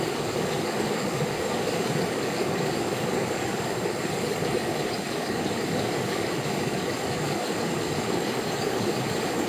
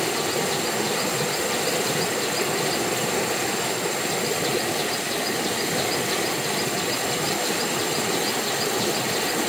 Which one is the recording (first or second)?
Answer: second